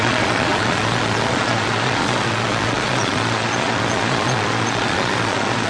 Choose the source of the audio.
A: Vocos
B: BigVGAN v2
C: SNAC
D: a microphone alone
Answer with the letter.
A